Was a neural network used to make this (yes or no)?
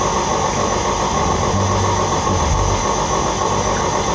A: no